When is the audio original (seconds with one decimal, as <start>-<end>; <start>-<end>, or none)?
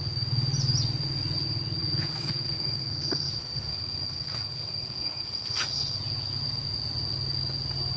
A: 0.0-1.8; 6.0-8.0